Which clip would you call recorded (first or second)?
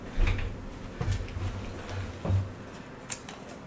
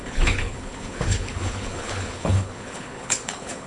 first